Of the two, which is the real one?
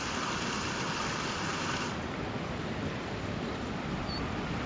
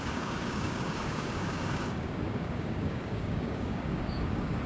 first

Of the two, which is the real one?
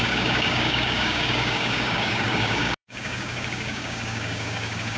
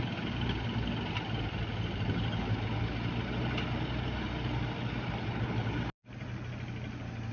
second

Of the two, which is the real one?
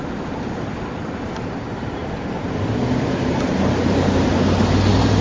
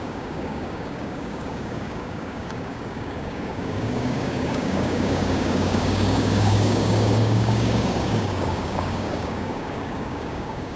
first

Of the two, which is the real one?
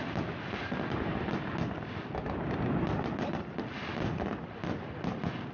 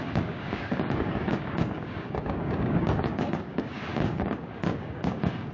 first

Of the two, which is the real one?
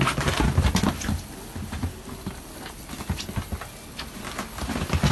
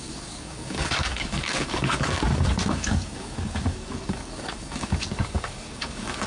first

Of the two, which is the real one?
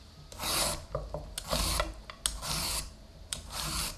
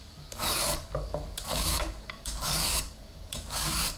first